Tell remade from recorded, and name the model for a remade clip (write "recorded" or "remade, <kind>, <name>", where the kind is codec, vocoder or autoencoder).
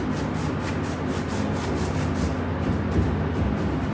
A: recorded